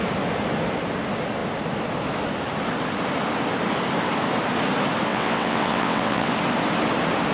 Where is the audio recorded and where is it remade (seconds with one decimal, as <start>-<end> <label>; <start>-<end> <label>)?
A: 0.0-5.1 recorded; 5.1-6.3 remade; 6.3-7.3 recorded